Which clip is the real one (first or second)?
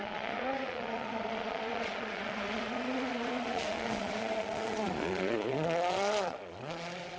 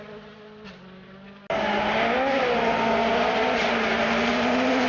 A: second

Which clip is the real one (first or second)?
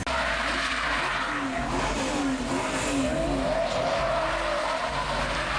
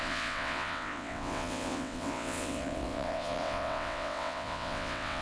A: first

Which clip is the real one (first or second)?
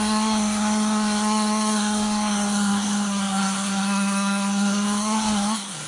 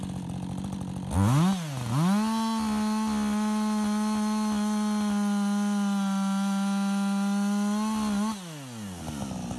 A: second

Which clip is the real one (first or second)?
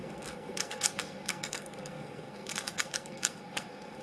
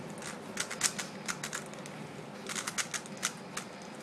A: second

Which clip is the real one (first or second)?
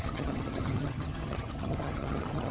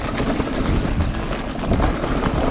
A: second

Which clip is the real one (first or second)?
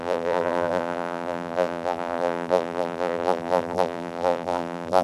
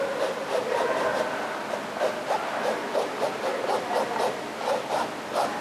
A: second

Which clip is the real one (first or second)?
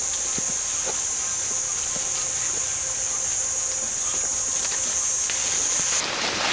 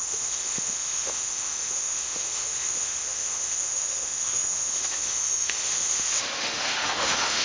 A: first